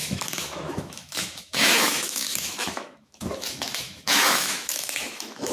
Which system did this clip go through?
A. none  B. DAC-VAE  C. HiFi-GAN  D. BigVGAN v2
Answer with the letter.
B